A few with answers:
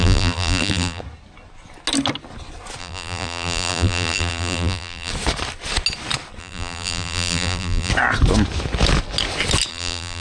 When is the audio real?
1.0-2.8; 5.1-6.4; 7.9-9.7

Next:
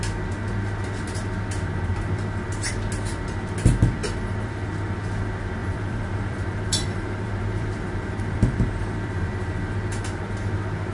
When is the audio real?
0.0-1.9; 2.7-4.0; 4.7-5.6; 10.0-10.9

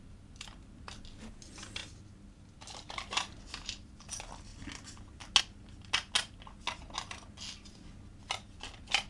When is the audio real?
0.0-9.1